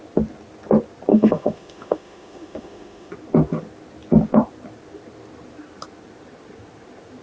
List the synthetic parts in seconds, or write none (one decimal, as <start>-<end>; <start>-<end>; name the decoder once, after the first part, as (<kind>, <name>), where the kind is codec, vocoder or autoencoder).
1.1-3.1 (autoencoder, DAC-VAE)